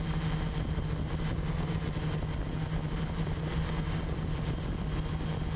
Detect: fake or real real